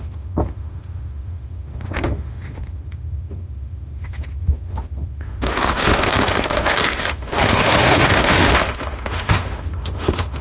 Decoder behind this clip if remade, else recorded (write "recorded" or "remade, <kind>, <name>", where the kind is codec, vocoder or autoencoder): remade, autoencoder, DAC-VAE